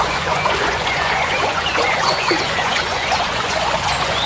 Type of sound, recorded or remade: remade